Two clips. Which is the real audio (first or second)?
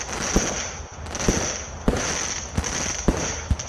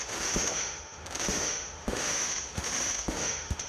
first